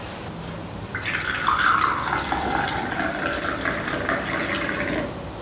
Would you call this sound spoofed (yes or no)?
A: no